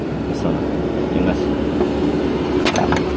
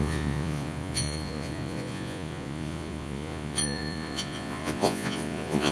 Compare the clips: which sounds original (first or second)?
first